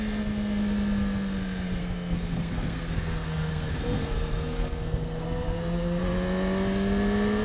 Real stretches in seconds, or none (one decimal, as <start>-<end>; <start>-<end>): 0.0-1.8; 6.0-7.4